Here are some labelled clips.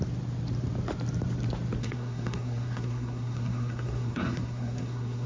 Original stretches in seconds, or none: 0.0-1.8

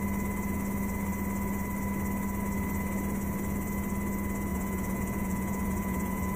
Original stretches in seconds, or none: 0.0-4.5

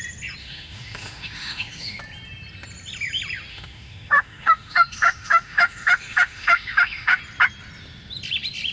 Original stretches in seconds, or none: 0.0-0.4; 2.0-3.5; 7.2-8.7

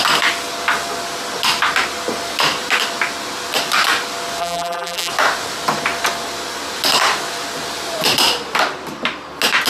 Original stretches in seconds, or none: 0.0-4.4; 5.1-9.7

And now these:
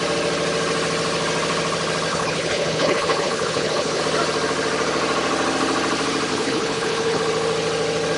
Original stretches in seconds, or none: 0.0-2.1; 4.0-6.3; 7.2-8.2

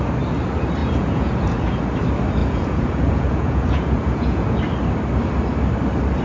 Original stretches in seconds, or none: 0.0-0.8; 1.8-2.4; 4.6-6.2